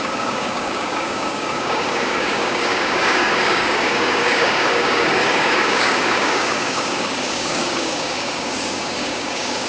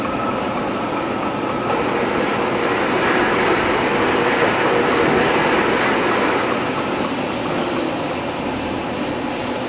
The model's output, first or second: first